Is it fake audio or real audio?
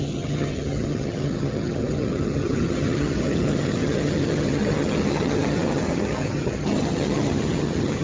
fake